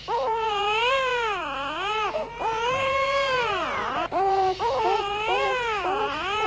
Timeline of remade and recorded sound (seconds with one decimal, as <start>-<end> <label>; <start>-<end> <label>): 0.0-6.5 remade